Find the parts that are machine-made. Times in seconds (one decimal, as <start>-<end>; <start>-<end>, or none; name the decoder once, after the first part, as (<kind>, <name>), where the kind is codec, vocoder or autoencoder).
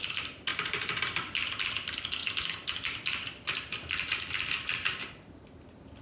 none